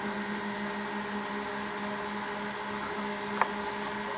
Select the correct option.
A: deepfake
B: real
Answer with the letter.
B